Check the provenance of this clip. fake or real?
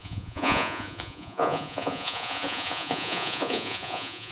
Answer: fake